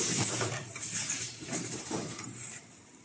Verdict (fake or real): fake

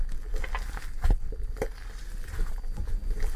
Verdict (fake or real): real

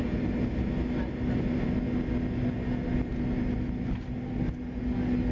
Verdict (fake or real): real